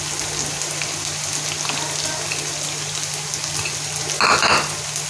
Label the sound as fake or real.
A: real